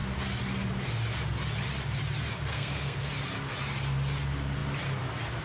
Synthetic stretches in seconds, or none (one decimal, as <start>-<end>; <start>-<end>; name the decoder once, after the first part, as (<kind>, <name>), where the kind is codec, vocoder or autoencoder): 2.5-3.1 (codec, SNAC)